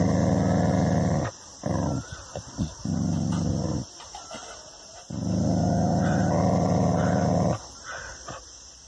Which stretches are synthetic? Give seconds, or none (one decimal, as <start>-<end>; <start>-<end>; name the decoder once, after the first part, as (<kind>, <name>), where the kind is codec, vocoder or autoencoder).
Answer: 1.5-2.3 (vocoder, BigVGAN v2); 5.2-7.9